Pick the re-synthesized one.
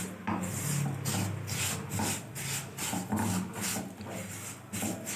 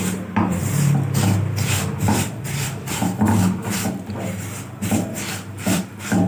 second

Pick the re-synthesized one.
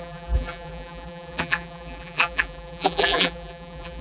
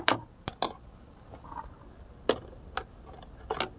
first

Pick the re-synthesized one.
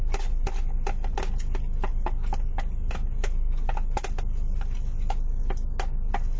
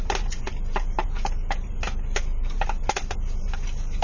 second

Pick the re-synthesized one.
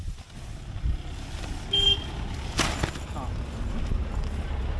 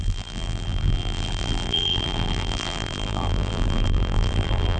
second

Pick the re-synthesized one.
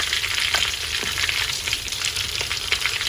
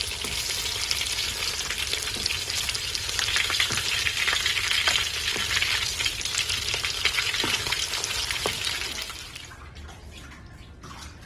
first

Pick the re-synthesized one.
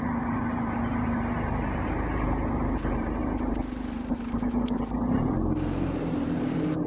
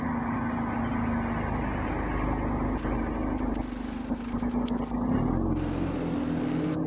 first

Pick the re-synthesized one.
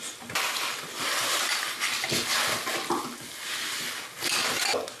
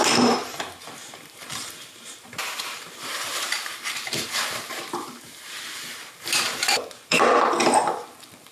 second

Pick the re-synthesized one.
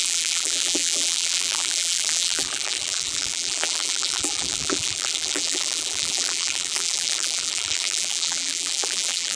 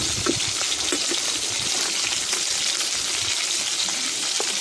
first